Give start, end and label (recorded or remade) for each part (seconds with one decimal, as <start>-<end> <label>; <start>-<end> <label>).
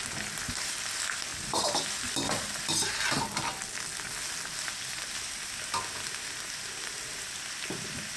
0.0-8.2 recorded